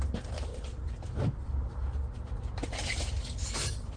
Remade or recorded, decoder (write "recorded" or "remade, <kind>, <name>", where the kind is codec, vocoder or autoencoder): remade, vocoder, BigVGAN v2